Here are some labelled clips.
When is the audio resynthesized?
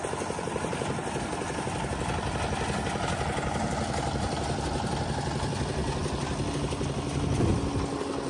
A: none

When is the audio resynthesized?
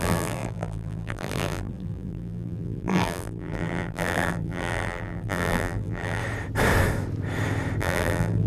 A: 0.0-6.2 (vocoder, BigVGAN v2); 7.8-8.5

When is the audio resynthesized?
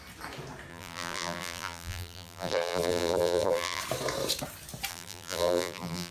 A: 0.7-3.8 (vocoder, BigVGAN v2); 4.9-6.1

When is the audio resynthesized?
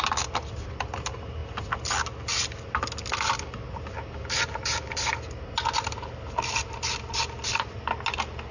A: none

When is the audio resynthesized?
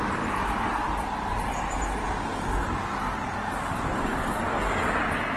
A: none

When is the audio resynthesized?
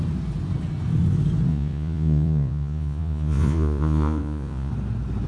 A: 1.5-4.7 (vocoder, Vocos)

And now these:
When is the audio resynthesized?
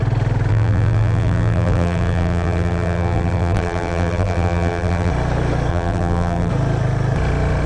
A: 0.5-5.1 (vocoder, BigVGAN v2); 5.7-6.5